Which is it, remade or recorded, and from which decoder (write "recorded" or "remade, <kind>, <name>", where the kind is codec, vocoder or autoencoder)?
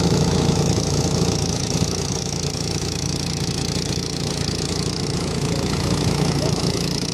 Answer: remade, autoencoder, DAC-VAE